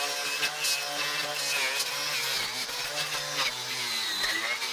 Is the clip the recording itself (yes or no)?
yes